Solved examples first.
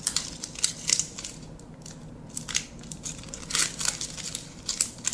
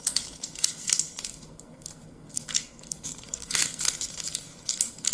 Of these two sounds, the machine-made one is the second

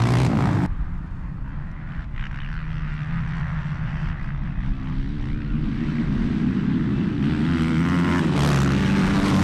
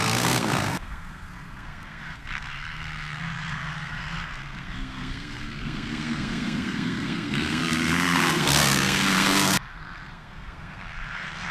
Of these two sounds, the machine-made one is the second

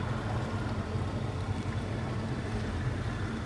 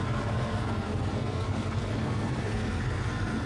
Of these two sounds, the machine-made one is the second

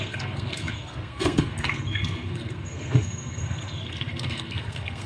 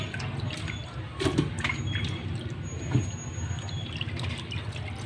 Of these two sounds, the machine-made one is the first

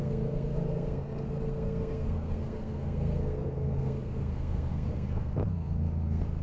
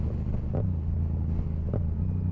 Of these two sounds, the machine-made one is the first